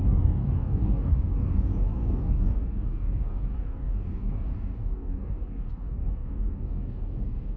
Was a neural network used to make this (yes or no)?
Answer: yes